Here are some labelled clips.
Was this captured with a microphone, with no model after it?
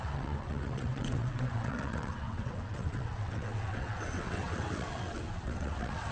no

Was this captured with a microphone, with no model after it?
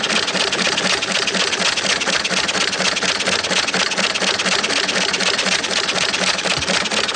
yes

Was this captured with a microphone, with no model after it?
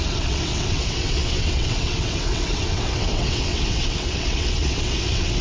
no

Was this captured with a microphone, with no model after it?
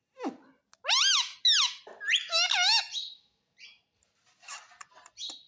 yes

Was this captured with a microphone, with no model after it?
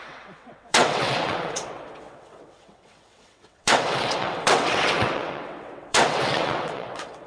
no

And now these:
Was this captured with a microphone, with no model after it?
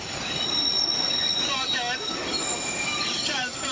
yes